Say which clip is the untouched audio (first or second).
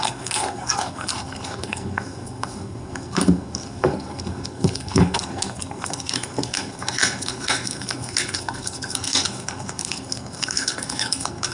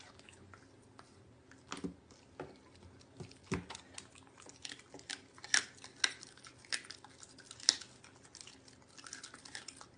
second